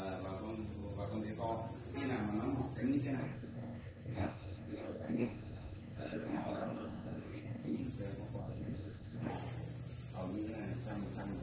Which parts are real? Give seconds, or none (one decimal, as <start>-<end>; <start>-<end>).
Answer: 0.0-3.2; 7.8-8.4; 9.3-11.4

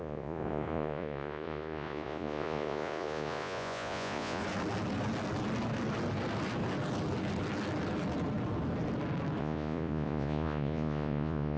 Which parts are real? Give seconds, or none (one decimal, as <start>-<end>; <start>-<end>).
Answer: 4.4-9.4

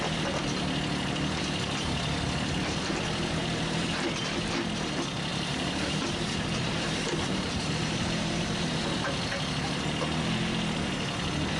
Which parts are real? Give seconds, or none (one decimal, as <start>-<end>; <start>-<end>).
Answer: 0.0-3.4; 4.1-5.3; 9.2-11.6